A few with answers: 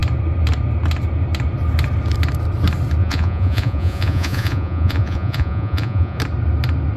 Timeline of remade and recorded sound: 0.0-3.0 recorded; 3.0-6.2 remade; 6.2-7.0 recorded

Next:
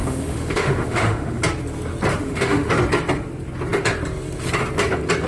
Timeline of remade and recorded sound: 0.0-1.4 remade; 1.4-2.1 recorded; 2.1-2.7 remade; 2.7-5.3 recorded

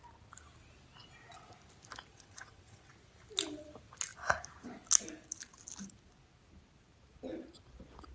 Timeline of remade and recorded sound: 0.0-2.1 recorded; 2.1-2.9 remade; 2.9-8.1 recorded